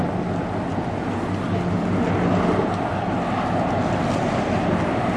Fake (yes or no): no